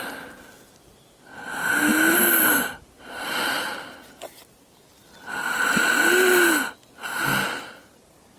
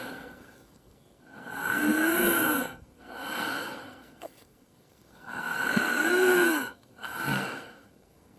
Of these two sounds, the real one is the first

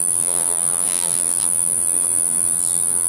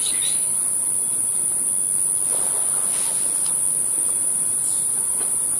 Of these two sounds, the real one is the second